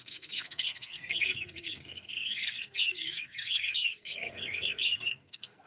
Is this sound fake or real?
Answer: fake